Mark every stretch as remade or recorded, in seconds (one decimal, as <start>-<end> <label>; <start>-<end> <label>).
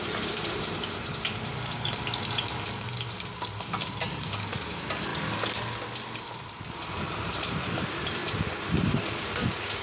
0.0-5.1 remade; 5.1-6.2 recorded; 6.2-9.8 remade